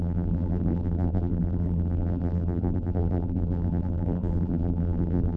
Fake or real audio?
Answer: fake